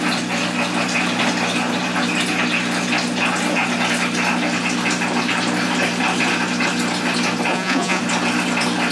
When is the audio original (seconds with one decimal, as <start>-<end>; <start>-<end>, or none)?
0.0-7.5; 8.0-8.9